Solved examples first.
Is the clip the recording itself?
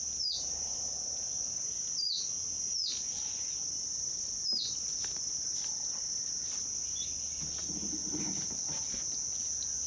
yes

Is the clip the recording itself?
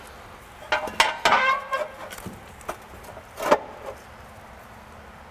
yes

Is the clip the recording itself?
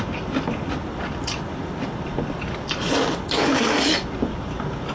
yes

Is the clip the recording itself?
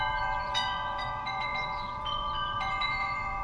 no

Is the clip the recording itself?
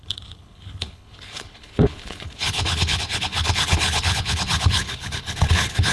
no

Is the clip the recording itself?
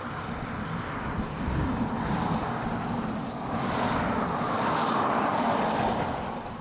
yes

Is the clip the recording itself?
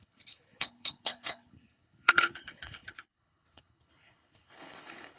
no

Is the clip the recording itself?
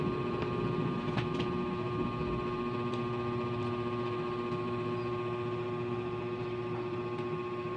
yes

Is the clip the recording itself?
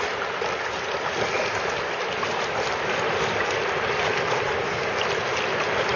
yes